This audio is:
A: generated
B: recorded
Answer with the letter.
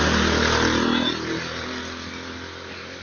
B